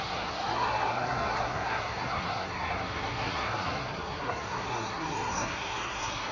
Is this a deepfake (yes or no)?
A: yes